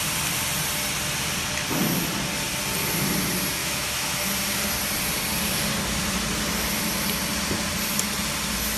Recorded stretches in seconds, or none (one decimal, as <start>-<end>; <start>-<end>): 0.0-3.6; 4.2-8.8